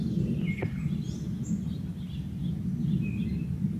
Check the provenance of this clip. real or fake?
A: real